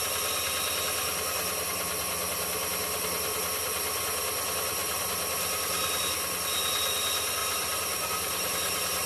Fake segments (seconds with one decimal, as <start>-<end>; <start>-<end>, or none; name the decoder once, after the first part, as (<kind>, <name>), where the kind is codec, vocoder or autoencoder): 4.8-6.0 (vocoder, BigVGAN v2); 7.4-9.1